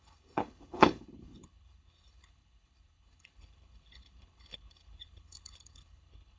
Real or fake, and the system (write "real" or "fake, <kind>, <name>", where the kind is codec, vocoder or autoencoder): fake, codec, HILCodec